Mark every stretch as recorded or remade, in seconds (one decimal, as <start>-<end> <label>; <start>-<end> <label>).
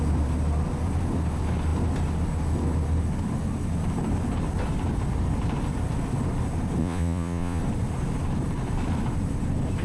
0.0-6.8 recorded; 6.8-7.6 remade; 7.6-9.8 recorded